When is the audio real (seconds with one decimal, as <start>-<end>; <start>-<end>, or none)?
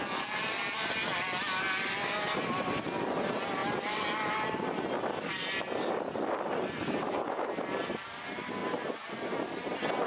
0.0-3.6; 7.3-10.1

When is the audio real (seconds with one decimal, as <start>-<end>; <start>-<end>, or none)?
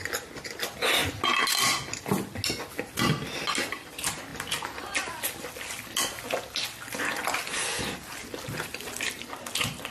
0.0-9.9